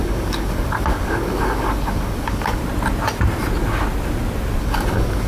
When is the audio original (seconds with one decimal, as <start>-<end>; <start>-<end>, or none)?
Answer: 2.6-4.6